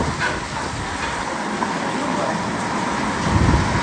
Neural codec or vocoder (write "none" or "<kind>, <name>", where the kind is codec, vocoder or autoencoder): none